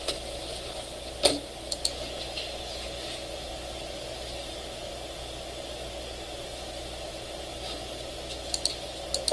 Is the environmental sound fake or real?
real